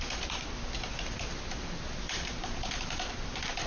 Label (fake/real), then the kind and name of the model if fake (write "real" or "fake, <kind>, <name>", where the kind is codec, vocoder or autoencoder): real